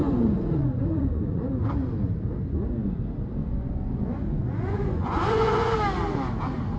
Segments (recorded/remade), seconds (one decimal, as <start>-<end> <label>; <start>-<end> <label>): 0.0-1.4 remade; 1.4-3.4 recorded; 3.4-5.7 remade; 5.7-6.8 recorded

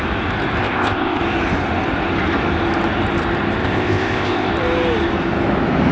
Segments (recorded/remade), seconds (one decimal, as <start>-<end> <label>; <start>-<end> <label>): 0.0-0.6 recorded; 0.6-1.2 remade; 1.2-3.6 recorded; 3.6-4.5 remade; 4.5-5.9 recorded

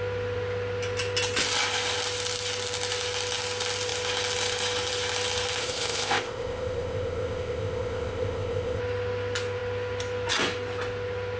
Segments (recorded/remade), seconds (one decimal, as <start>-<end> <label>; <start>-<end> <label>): 0.0-5.6 recorded; 5.6-8.8 remade; 8.8-11.4 recorded

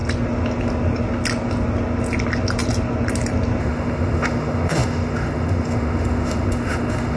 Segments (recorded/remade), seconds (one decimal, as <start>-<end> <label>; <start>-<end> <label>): 0.0-3.6 recorded; 3.6-7.2 remade